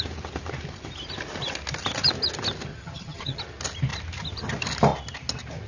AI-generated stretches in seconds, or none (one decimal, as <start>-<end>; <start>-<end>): 2.7-3.4